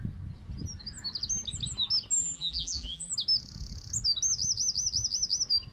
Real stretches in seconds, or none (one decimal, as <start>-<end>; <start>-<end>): 0.0-2.2; 3.1-5.7